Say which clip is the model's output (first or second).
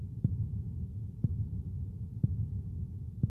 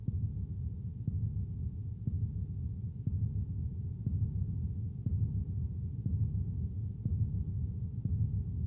first